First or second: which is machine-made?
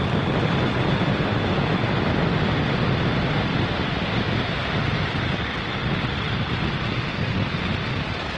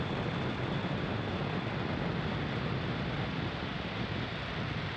first